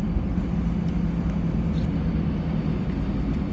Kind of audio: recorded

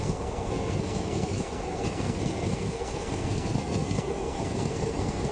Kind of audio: remade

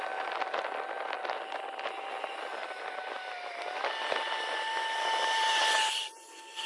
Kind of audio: recorded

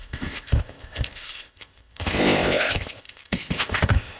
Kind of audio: remade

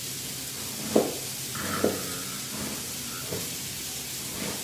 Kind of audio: recorded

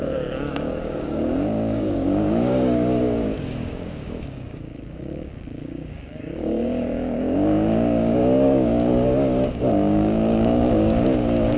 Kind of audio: remade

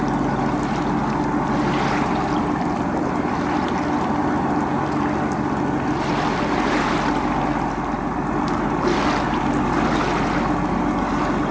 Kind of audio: recorded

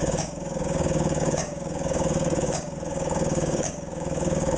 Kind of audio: remade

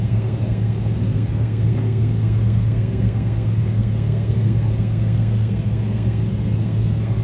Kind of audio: remade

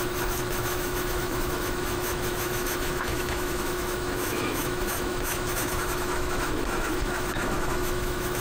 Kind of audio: remade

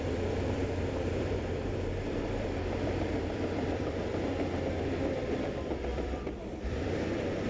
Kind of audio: remade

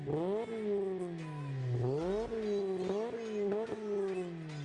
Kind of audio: recorded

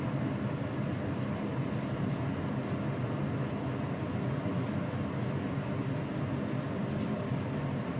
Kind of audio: recorded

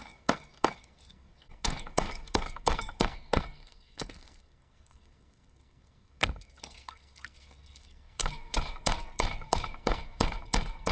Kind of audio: remade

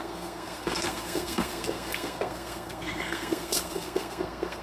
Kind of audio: remade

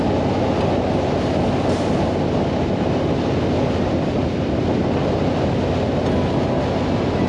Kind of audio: recorded